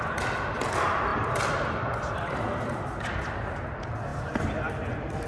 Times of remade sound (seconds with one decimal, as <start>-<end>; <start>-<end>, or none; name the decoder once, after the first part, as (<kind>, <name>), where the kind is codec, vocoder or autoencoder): none